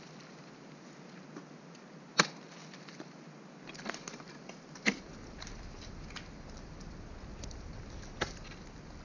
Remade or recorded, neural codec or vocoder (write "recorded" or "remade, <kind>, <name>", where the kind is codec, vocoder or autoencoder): recorded